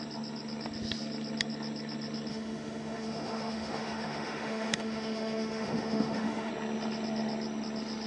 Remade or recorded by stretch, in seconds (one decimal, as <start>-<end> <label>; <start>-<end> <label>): 0.0-2.3 recorded; 2.3-6.5 remade; 6.5-8.1 recorded